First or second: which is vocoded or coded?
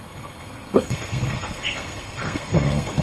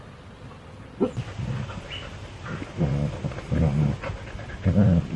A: first